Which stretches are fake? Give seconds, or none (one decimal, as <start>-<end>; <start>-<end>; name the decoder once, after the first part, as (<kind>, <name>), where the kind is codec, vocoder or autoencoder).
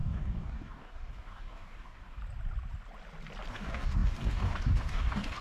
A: 0.0-2.2 (codec, DAC); 3.5-5.4